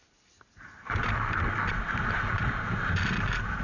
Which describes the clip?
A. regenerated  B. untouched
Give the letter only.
B